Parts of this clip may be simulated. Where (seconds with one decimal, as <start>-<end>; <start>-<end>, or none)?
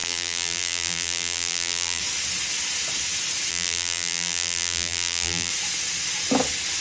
0.0-2.0; 3.5-5.5